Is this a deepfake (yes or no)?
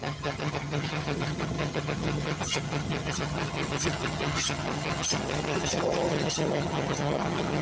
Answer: yes